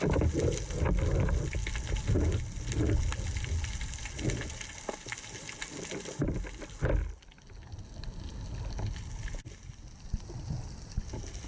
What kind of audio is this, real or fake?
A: real